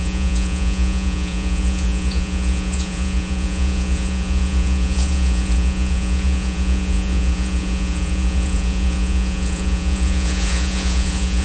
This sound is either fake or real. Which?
fake